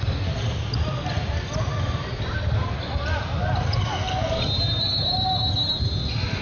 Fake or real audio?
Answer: real